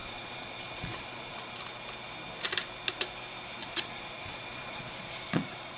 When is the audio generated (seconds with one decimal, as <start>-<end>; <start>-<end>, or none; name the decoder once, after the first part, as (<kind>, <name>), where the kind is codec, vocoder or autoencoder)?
0.0-1.6 (vocoder, Vocos); 3.6-5.8